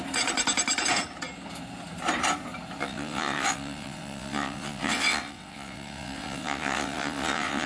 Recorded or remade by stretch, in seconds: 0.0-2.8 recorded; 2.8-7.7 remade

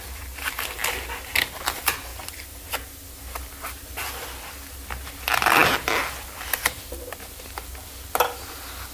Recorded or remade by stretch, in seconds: 0.0-8.9 recorded